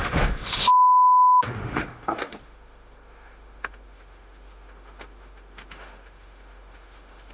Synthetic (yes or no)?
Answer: yes